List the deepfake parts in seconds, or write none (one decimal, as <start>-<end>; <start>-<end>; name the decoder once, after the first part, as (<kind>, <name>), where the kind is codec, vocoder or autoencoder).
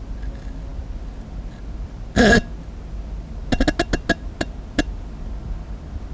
none